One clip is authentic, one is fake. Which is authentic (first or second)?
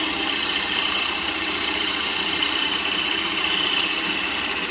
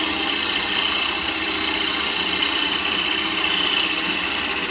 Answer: second